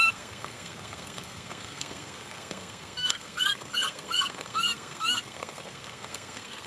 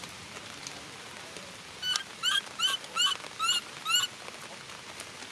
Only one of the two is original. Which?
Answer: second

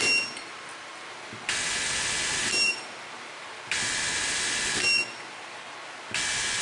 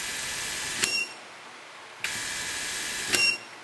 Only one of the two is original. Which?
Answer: first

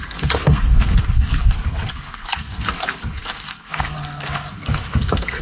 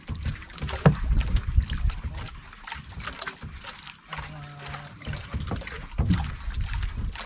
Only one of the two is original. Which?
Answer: second